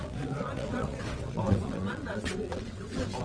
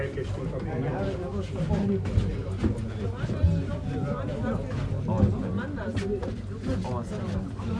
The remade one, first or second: first